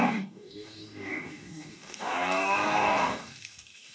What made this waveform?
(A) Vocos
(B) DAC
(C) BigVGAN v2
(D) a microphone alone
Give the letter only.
B